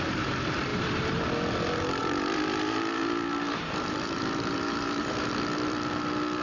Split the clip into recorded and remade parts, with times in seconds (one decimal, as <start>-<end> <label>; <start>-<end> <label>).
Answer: 0.0-0.7 recorded; 0.7-1.2 remade; 1.2-2.0 recorded; 2.0-5.3 remade; 5.3-6.4 recorded